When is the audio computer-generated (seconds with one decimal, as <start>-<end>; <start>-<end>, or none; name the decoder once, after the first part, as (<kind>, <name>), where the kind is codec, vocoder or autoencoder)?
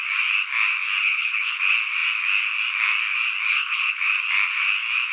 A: 1.0-1.6 (codec, HILCodec); 3.5-4.0